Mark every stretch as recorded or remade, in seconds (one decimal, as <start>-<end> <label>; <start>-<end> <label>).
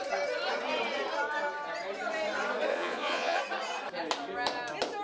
0.0-2.7 recorded; 2.7-3.4 remade; 3.4-5.0 recorded